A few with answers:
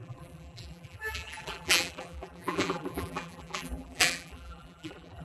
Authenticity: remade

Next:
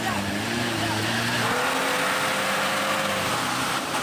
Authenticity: recorded